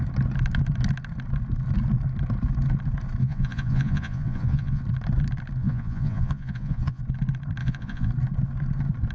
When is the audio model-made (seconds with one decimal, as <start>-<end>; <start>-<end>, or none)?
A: 3.2-4.8; 5.6-7.0; 7.6-8.1